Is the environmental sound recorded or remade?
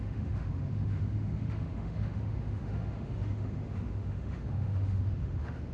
remade